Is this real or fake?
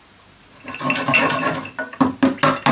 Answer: real